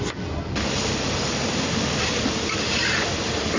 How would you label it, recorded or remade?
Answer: recorded